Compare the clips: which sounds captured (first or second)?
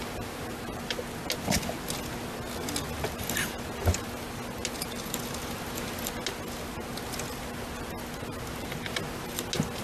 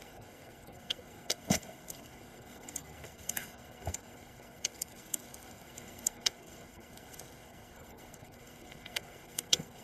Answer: first